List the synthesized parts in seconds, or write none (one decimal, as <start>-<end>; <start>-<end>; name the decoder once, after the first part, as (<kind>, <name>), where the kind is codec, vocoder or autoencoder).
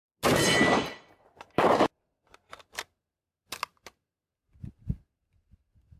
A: none